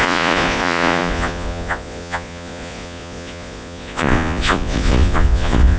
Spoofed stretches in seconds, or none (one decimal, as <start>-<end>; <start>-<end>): 0.0-5.8